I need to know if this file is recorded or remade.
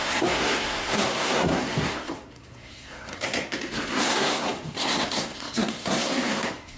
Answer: remade